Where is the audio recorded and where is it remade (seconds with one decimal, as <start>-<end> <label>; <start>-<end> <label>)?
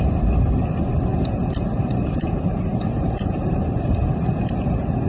0.0-1.1 recorded; 1.1-4.2 remade; 4.2-5.1 recorded